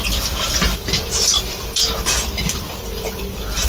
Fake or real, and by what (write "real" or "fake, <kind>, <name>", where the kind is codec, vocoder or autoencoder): fake, vocoder, BigVGAN v2